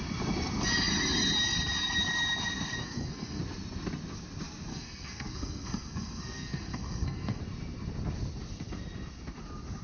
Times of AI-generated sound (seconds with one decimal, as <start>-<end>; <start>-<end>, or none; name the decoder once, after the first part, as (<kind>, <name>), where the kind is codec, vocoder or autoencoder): 2.8-3.4 (codec, SNAC); 4.7-7.4